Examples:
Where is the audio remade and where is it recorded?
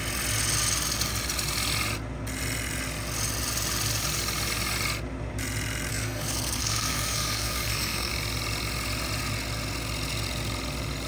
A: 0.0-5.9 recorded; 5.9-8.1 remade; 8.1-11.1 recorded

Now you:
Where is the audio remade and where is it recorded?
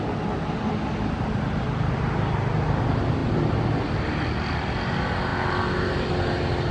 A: 0.0-6.7 recorded